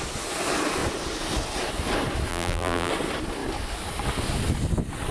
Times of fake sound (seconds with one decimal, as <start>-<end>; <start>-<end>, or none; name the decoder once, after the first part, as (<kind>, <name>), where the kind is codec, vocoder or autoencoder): 2.3-2.9 (vocoder, BigVGAN v2)